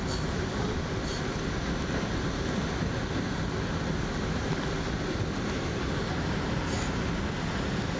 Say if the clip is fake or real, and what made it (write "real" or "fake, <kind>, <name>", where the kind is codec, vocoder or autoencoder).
real